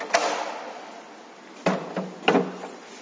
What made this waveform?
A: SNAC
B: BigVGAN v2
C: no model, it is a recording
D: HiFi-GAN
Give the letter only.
C